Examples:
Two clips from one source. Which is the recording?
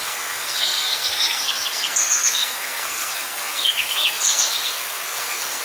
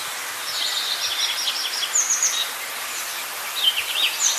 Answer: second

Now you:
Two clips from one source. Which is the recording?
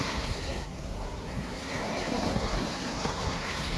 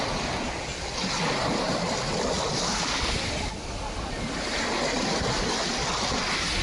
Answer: second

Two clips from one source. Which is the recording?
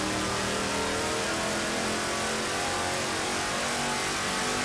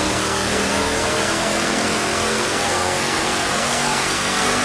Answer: first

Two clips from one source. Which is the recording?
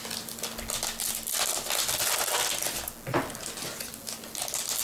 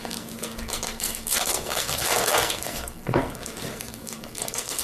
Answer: first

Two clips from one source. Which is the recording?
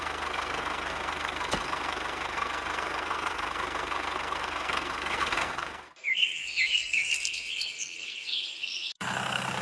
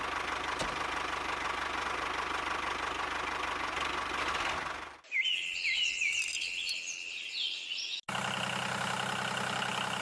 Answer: second